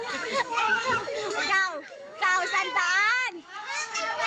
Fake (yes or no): yes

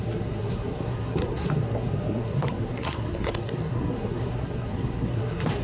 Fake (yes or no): yes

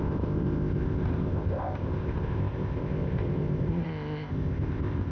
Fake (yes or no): yes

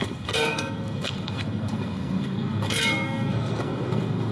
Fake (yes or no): yes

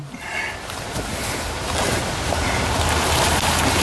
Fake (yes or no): no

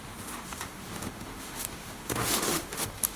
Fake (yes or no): yes